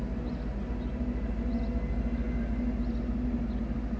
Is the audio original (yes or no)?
yes